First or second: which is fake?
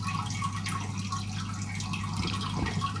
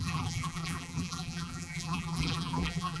second